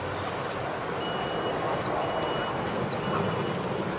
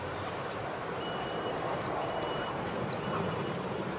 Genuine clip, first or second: first